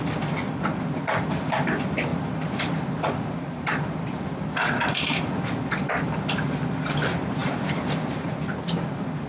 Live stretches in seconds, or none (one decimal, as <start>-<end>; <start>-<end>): 0.0-9.3